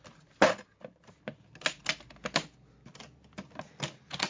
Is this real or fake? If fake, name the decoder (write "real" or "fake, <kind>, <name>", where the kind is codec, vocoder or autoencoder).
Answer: real